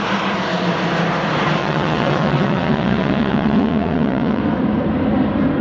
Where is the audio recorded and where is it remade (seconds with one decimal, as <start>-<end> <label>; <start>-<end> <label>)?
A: 0.0-1.6 recorded; 1.6-4.4 remade; 4.4-5.6 recorded

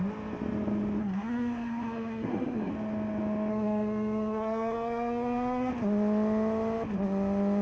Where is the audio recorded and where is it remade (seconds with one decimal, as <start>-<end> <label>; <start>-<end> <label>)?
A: 0.0-1.0 recorded; 1.0-2.7 remade; 2.7-3.5 recorded; 3.5-5.7 remade; 5.7-7.6 recorded